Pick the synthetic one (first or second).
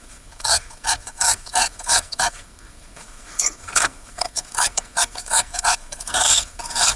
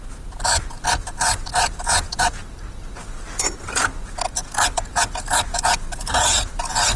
first